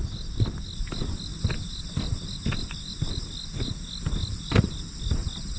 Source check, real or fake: real